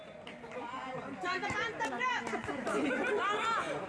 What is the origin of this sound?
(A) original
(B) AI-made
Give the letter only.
A